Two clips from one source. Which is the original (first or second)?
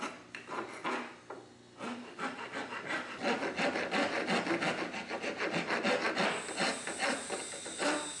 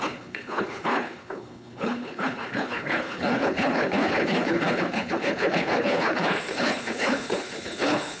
first